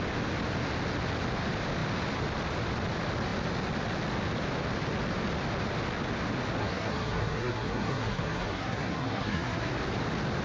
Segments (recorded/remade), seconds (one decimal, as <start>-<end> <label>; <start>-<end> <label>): 0.0-6.6 recorded; 6.6-9.7 remade; 9.7-10.4 recorded